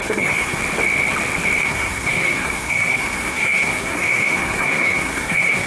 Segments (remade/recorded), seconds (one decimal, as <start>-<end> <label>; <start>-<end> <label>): 0.0-0.6 remade; 0.6-1.6 recorded; 1.6-5.7 remade